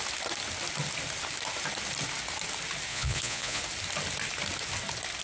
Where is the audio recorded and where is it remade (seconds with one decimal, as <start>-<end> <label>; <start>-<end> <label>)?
0.0-2.9 recorded; 2.9-3.6 remade; 3.6-5.2 recorded